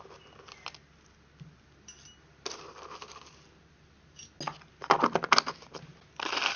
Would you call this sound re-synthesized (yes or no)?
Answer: no